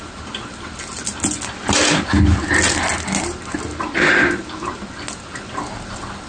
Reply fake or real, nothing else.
real